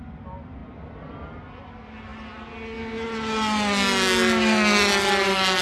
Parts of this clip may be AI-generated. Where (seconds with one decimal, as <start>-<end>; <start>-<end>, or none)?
none